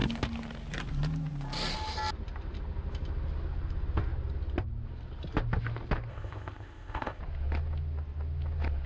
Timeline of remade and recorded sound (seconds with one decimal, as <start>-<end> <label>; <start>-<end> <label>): 0.0-6.1 recorded; 6.1-7.2 remade; 7.2-8.9 recorded